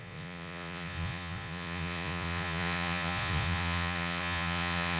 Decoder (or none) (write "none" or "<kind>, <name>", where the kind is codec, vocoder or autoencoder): vocoder, Vocos